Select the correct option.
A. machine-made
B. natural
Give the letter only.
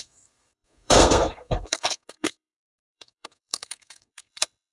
A